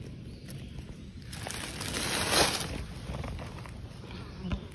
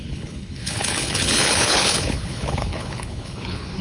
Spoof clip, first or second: second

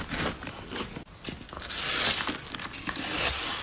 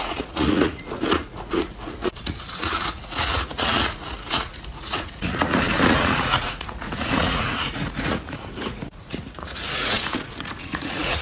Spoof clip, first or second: second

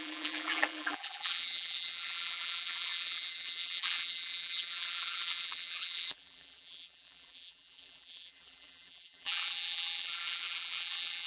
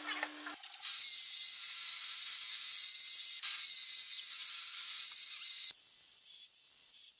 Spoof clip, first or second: first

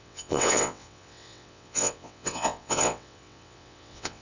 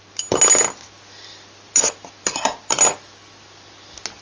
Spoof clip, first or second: first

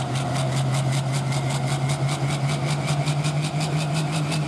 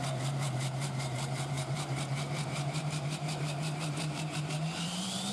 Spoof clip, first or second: second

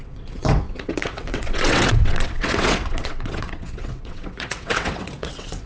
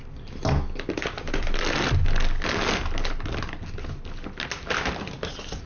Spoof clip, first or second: first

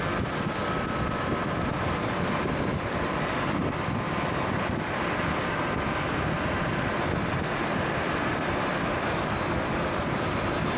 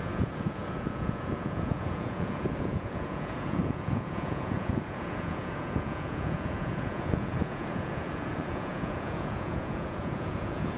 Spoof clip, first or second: second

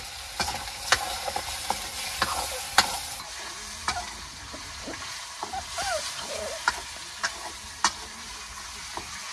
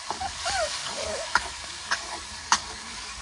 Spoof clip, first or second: second